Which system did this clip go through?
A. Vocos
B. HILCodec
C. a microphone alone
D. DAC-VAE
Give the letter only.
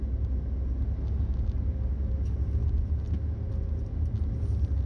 C